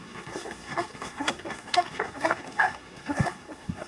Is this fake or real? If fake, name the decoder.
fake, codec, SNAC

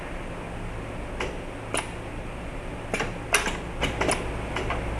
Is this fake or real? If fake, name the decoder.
real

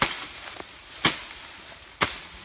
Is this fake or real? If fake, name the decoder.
real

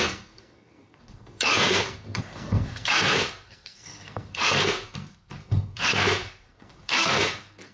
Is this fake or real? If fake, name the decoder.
fake, codec, SNAC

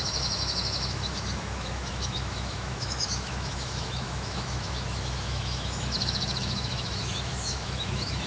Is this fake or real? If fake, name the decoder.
fake, autoencoder, DAC-VAE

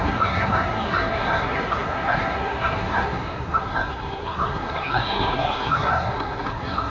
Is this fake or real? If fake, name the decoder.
fake, codec, SNAC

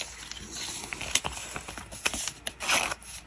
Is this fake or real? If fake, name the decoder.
real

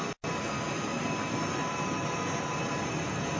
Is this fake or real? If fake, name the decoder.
real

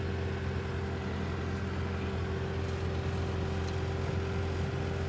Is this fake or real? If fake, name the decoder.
real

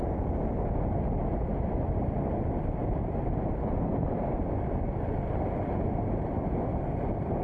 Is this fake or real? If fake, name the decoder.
real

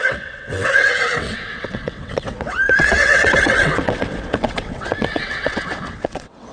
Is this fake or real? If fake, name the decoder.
fake, vocoder, WaveNeXt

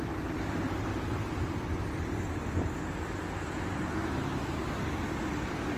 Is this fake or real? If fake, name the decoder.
real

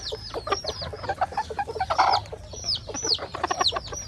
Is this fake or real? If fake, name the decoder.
fake, vocoder, BigVGAN v2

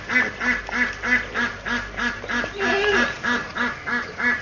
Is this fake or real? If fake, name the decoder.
real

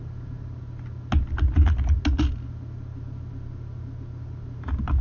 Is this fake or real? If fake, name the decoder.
real